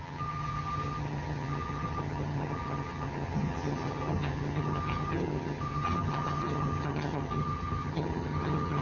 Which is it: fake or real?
fake